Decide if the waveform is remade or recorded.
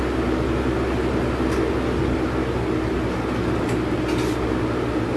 recorded